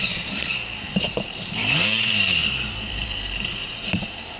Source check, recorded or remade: remade